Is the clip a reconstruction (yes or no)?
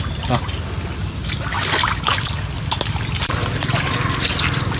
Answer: no